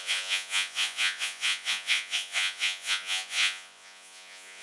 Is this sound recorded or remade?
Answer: remade